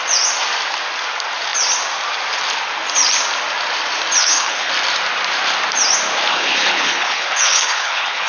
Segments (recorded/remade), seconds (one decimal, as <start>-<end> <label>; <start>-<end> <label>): 0.0-4.2 recorded; 4.2-4.7 remade; 4.7-6.3 recorded; 6.3-8.3 remade

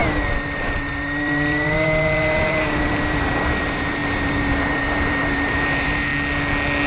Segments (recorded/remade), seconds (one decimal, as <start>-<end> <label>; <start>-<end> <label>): 0.0-6.1 remade; 6.1-6.9 recorded

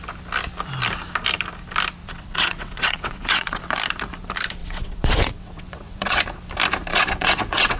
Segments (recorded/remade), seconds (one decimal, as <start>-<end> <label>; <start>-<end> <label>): 0.0-2.0 recorded; 2.0-3.6 remade; 3.6-4.6 recorded; 4.6-6.2 remade; 6.2-6.9 recorded; 6.9-7.8 remade

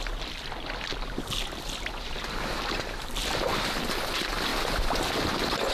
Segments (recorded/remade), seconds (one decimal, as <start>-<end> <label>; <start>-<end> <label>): 0.0-3.2 recorded; 3.2-3.8 remade; 3.8-5.7 recorded

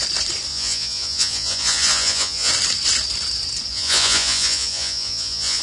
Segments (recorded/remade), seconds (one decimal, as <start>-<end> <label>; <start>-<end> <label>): 0.0-0.5 recorded; 0.5-2.5 remade; 2.5-3.7 recorded; 3.7-5.6 remade

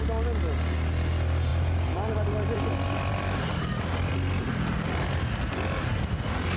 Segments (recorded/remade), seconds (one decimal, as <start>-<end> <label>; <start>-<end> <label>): 0.0-1.5 recorded; 1.5-4.1 remade; 4.1-6.6 recorded

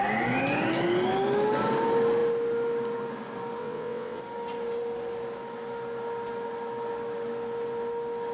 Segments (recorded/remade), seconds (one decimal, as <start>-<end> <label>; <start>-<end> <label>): 0.0-3.6 recorded; 3.6-4.2 remade; 4.2-8.3 recorded